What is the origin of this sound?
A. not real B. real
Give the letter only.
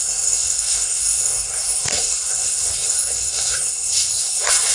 A